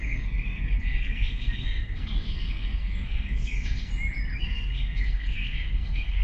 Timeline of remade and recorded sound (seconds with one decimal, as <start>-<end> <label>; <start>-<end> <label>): 0.0-3.9 remade; 3.9-4.4 recorded; 4.4-6.2 remade